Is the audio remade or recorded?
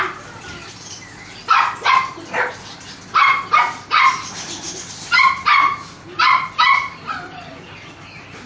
recorded